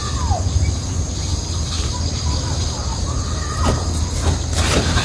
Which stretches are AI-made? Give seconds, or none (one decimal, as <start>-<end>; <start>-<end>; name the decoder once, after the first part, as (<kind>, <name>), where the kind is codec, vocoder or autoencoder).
none